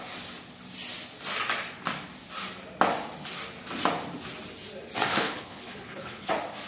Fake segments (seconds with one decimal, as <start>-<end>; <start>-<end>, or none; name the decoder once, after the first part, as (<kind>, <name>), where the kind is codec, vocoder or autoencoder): 5.1-6.3 (codec, HILCodec)